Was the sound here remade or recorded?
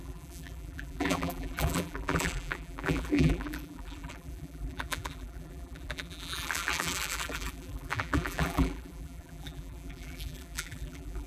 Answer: remade